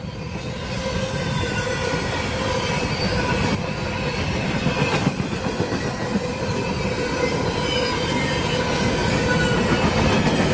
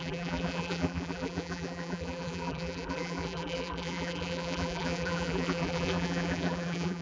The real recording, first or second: first